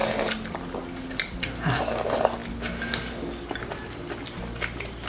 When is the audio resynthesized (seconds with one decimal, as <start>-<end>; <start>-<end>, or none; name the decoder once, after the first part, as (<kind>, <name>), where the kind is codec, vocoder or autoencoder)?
0.0-1.8 (vocoder, BigVGAN v2)